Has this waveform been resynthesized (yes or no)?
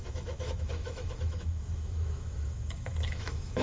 yes